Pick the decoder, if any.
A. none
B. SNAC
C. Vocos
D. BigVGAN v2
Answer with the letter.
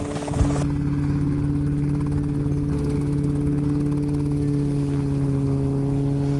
A